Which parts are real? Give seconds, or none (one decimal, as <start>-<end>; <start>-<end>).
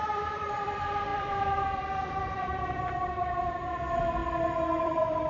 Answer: 4.2-4.8